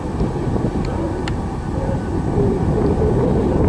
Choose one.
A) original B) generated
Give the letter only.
A